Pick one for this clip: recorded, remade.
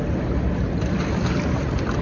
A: recorded